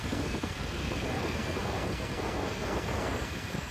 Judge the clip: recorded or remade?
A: remade